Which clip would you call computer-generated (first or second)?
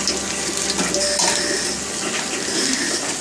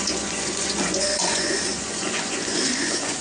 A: second